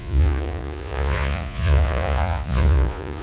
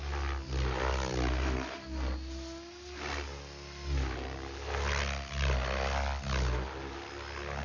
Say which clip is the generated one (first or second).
first